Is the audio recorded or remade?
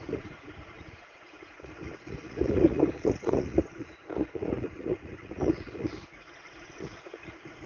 remade